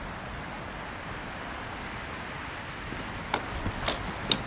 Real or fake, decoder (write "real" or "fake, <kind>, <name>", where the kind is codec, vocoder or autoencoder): real